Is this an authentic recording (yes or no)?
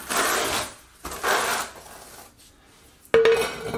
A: yes